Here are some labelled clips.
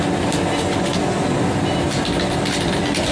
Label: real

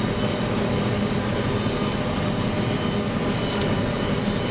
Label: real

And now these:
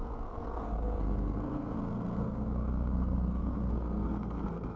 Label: fake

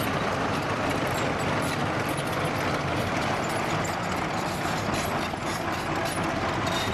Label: real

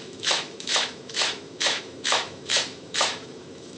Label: fake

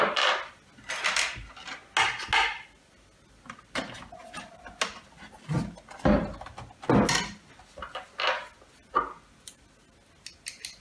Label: real